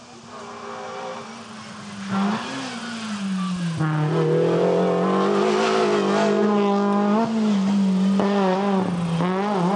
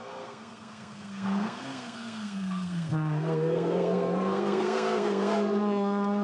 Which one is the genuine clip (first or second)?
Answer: first